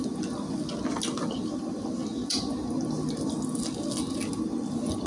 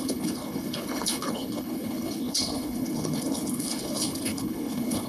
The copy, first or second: second